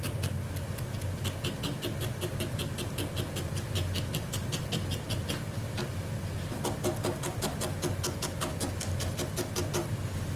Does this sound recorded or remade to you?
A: recorded